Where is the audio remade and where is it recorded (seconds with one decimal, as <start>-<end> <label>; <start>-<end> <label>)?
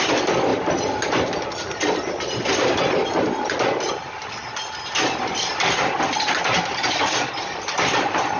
0.0-8.4 recorded